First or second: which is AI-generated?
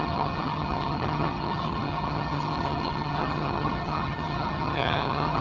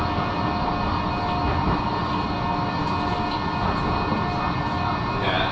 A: first